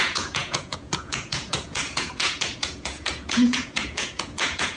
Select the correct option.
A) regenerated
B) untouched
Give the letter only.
A